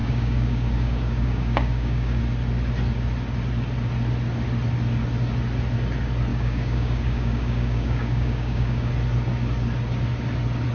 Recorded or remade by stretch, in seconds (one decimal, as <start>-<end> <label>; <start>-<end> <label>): 0.0-2.2 remade; 2.2-6.3 recorded; 6.3-8.9 remade; 8.9-10.7 recorded